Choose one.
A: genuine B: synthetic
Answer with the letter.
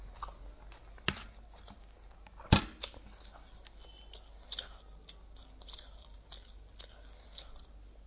A